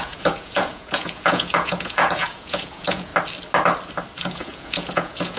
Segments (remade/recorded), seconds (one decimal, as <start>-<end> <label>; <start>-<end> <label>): 0.0-3.1 remade; 3.1-4.2 recorded; 4.2-5.4 remade